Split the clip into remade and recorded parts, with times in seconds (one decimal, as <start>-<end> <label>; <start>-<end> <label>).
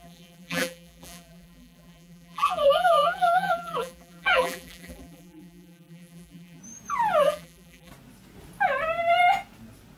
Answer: 0.0-6.6 remade; 6.6-7.2 recorded; 7.2-7.9 remade; 7.9-10.0 recorded